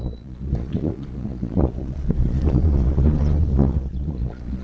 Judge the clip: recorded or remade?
remade